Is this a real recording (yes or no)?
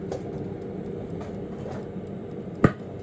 yes